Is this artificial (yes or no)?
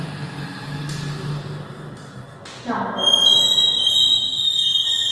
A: no